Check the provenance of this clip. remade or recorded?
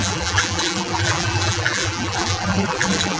remade